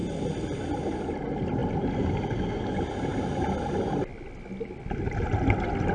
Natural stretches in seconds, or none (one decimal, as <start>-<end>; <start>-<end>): 0.0-5.9